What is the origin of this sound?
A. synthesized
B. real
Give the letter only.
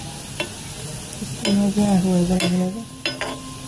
B